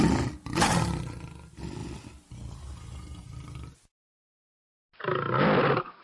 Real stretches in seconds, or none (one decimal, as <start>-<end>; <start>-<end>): 0.0-6.0